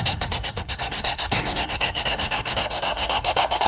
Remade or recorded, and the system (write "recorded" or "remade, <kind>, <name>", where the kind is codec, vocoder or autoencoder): remade, codec, SNAC